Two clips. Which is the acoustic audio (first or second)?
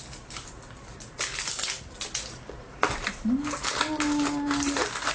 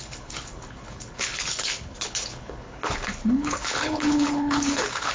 first